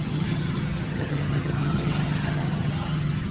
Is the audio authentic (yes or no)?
no